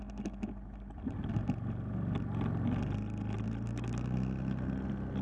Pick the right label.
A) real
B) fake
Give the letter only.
A